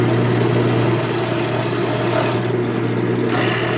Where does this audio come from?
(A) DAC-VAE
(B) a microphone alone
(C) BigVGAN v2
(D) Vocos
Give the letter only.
B